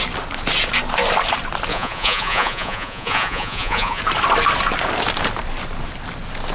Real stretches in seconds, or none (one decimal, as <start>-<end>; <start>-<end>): 0.0-1.7; 4.0-6.5